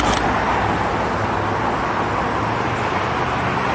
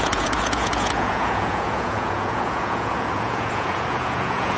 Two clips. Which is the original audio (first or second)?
first